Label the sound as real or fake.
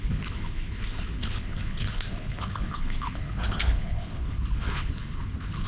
fake